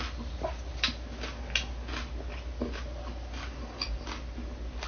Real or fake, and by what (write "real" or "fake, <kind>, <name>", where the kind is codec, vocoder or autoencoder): real